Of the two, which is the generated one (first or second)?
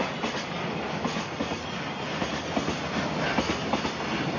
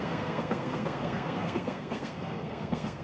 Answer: second